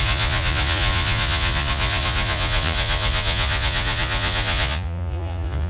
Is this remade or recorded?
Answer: remade